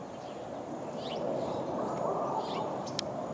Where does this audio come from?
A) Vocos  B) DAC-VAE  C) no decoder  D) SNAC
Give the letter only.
C